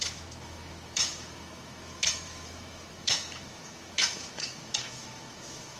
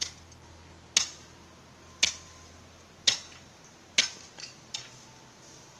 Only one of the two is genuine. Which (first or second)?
second